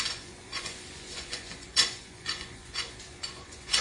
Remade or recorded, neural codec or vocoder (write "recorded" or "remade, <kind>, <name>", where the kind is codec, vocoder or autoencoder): remade, vocoder, Vocos